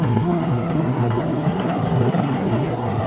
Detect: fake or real fake